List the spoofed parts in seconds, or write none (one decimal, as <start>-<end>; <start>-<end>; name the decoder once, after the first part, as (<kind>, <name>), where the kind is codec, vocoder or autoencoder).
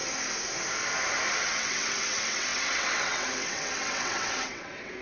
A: 1.4-5.0 (vocoder, WaveNeXt)